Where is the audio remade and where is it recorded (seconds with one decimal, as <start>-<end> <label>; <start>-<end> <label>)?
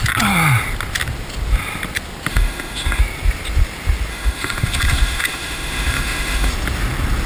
0.0-2.3 recorded; 2.3-3.0 remade; 3.0-4.1 recorded; 4.1-6.5 remade; 6.5-7.3 recorded